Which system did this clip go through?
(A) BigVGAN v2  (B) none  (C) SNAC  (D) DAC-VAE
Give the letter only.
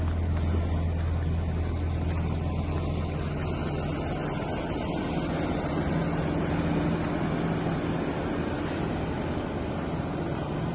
B